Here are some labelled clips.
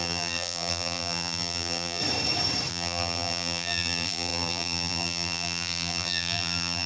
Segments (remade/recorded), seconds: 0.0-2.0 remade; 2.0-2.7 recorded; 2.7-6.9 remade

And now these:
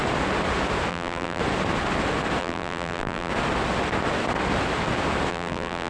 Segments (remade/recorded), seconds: 0.0-0.9 recorded; 0.9-1.4 remade; 1.4-2.4 recorded; 2.4-3.3 remade; 3.3-5.3 recorded; 5.3-5.9 remade

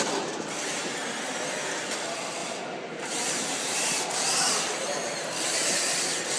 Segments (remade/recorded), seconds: 0.0-2.4 recorded; 2.4-4.6 remade; 4.6-6.4 recorded